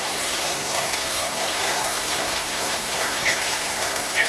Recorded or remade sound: remade